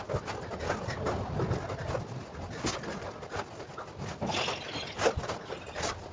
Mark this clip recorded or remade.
recorded